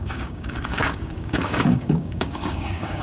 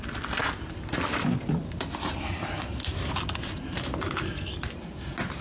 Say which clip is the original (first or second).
second